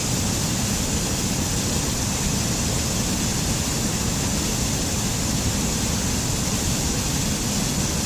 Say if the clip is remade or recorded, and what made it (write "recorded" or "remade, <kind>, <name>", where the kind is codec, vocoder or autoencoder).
recorded